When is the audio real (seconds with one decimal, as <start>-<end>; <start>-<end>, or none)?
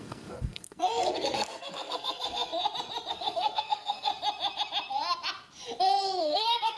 2.5-3.1; 4.1-6.2